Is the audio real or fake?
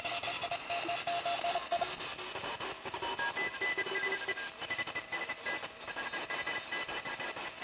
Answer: real